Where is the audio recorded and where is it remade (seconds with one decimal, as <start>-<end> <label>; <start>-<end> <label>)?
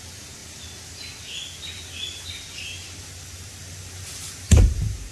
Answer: 0.0-0.4 remade; 0.4-3.4 recorded; 3.4-5.1 remade